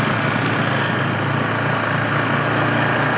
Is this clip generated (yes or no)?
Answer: no